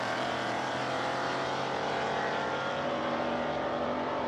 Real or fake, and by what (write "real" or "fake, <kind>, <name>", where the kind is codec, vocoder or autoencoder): fake, vocoder, BigVGAN v2